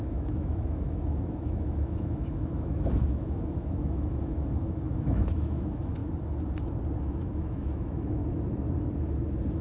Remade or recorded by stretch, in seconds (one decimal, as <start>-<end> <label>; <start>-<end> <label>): 0.0-6.0 remade; 6.0-7.1 recorded; 7.1-8.2 remade; 8.2-9.6 recorded